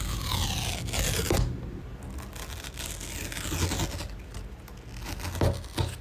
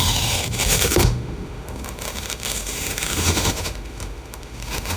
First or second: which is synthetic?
second